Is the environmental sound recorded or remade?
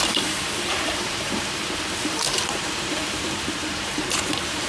remade